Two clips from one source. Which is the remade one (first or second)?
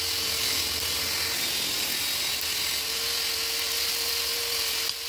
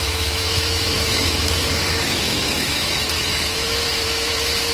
second